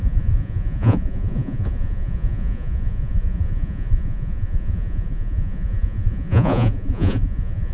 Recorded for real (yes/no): no